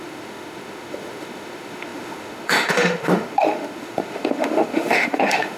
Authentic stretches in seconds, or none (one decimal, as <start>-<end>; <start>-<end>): none